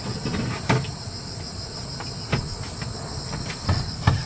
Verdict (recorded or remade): recorded